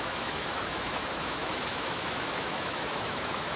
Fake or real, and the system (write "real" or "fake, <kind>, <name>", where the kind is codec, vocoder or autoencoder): fake, autoencoder, DAC-VAE